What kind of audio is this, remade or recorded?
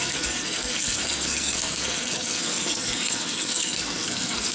remade